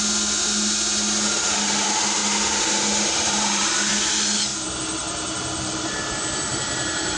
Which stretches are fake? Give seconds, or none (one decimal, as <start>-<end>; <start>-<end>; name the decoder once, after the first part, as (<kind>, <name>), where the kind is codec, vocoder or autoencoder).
2.2-3.9 (vocoder, BigVGAN v2)